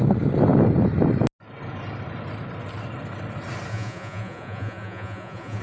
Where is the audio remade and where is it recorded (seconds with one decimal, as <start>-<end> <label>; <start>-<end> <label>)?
0.0-3.7 recorded; 3.7-5.6 remade